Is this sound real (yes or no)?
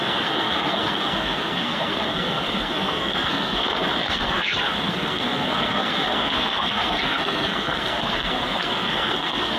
no